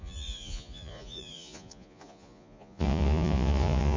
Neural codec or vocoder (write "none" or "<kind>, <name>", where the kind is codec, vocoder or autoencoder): vocoder, Vocos